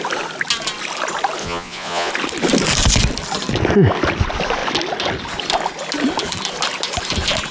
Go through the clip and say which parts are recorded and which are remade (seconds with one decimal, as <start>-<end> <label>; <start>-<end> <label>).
0.0-1.4 recorded; 1.4-2.1 remade; 2.1-7.5 recorded